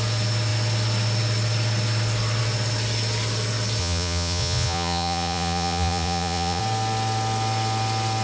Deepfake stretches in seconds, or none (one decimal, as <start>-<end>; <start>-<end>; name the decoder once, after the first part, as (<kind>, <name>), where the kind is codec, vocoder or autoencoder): 3.8-6.6 (vocoder, Vocos)